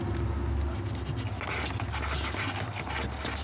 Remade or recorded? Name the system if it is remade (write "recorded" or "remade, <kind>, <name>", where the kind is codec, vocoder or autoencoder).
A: recorded